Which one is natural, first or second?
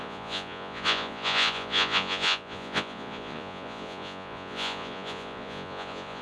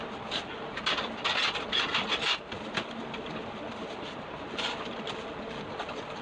second